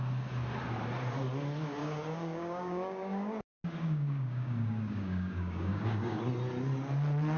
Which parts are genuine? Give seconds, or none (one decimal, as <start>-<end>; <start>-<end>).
0.0-1.8; 6.2-7.4